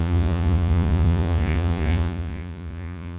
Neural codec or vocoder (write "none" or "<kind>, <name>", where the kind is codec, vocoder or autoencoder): vocoder, Vocos